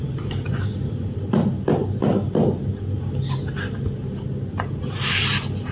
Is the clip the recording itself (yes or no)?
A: yes